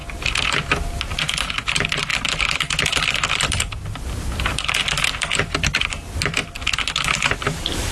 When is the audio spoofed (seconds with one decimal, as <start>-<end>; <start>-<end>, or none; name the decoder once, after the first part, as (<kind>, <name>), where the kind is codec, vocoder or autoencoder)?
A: none

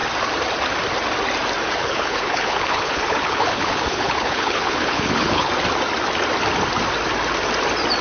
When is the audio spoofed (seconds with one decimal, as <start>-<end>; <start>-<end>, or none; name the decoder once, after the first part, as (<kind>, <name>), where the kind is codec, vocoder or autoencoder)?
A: 1.8-5.5 (codec, HILCodec)

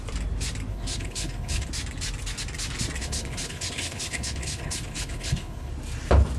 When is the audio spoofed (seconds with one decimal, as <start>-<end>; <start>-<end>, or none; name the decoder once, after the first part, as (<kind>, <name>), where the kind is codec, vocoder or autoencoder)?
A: 0.7-1.7 (codec, HILCodec); 3.0-5.7

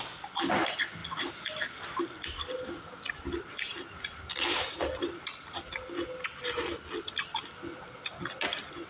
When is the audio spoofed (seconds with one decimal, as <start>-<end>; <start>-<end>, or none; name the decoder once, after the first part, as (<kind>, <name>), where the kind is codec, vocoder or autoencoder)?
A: none

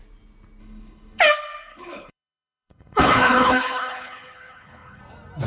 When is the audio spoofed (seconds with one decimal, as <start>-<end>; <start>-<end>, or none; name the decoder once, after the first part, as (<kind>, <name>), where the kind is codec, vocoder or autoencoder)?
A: 0.6-1.2 (codec, HILCodec); 1.7-5.0

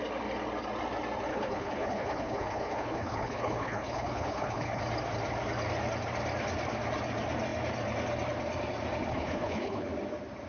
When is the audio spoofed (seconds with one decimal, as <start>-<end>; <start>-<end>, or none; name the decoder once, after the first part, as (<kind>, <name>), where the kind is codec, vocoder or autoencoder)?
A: 1.3-4.8 (codec, HILCodec); 9.1-9.9

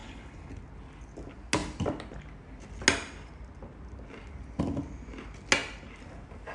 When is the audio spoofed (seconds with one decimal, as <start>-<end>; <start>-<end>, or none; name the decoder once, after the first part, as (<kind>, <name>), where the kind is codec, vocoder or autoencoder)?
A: 0.0-0.5 (codec, HILCodec)

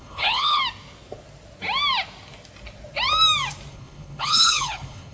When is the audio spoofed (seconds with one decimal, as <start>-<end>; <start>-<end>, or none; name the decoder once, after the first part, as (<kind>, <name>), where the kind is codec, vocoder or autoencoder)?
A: 0.0-0.6 (codec, HILCodec); 3.7-5.1